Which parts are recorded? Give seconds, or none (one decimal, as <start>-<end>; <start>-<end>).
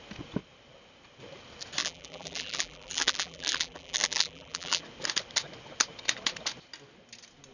0.0-1.8; 4.8-7.5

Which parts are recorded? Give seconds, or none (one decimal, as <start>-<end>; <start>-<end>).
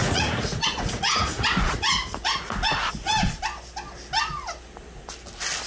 3.4-5.7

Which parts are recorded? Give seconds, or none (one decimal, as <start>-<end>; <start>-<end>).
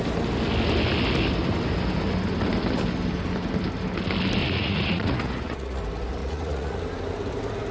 0.0-4.4; 5.8-6.2; 6.8-7.7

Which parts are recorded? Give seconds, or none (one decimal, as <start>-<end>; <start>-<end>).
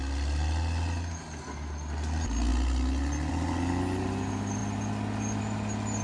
0.0-6.0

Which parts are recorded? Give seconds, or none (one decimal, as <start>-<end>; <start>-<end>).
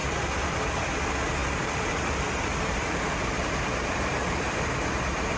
0.0-1.4; 4.5-5.4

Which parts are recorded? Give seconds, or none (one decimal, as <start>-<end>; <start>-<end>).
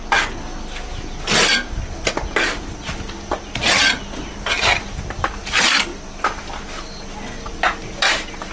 0.0-8.5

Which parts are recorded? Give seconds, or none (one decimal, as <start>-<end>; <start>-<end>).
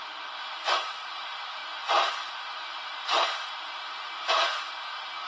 0.0-5.3